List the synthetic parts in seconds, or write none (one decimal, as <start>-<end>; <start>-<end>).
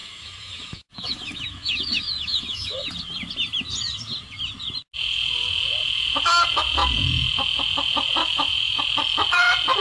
0.0-2.9; 8.2-8.8